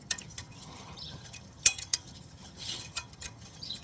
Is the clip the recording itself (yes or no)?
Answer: no